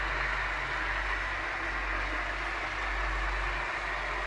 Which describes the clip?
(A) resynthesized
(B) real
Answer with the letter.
B